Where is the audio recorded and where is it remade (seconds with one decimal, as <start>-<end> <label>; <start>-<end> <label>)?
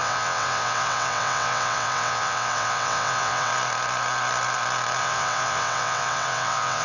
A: 0.0-3.5 remade; 3.5-5.0 recorded; 5.0-6.8 remade